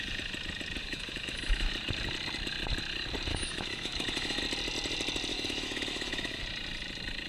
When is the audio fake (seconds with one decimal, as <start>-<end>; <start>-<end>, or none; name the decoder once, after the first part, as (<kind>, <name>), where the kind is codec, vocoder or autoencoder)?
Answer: 0.8-1.7 (autoencoder, DAC-VAE); 3.3-4.4; 5.3-6.4